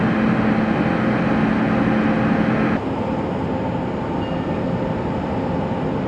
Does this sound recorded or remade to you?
recorded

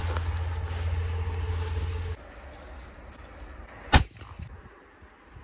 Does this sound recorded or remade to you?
recorded